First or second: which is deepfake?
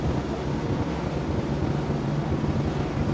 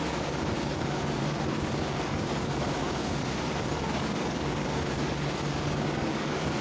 second